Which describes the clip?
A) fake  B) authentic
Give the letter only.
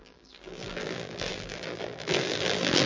A